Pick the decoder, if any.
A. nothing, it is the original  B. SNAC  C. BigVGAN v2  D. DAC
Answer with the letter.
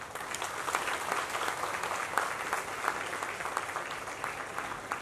A